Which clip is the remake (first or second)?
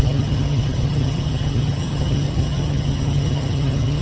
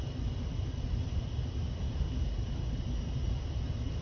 first